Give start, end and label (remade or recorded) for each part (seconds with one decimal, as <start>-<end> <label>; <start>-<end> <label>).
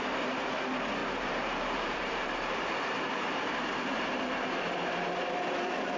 0.0-1.0 recorded; 1.0-4.6 remade; 4.6-6.0 recorded